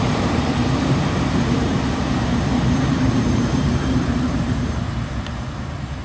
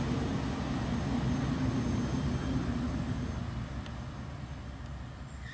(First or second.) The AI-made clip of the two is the first